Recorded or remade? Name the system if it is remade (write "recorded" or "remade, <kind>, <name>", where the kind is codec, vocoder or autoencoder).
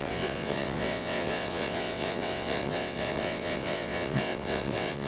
remade, vocoder, WaveNeXt